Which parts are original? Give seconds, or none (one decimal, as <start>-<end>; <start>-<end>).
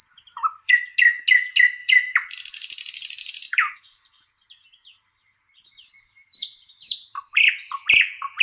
0.7-1.8; 4.3-4.9; 7.5-8.4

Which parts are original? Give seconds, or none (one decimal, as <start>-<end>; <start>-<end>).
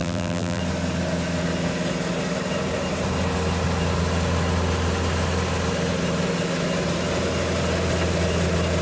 0.6-8.8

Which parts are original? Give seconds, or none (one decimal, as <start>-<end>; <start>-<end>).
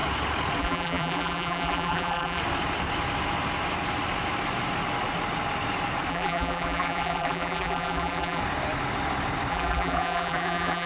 0.0-0.6; 2.4-6.1; 8.4-9.5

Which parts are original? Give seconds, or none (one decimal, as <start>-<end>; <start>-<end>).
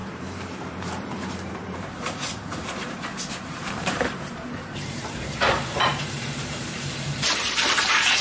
none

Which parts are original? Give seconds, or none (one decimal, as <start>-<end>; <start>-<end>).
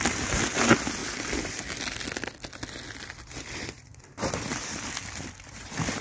1.0-2.5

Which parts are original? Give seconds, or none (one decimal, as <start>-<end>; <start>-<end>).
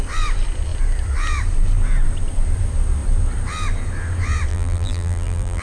0.0-4.5